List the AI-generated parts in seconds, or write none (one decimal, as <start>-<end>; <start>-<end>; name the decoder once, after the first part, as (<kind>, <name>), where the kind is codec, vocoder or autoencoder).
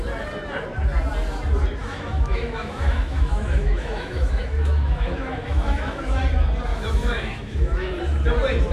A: 1.8-6.2 (autoencoder, DAC-VAE); 6.7-8.0